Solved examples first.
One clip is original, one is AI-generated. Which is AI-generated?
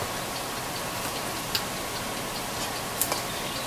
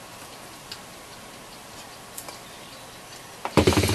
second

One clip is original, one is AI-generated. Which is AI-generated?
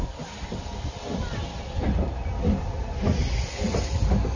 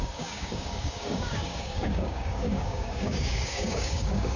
second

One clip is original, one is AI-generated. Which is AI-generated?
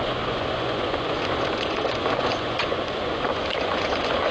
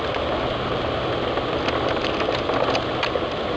first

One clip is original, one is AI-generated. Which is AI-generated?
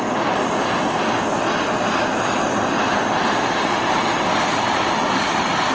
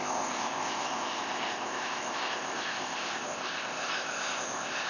second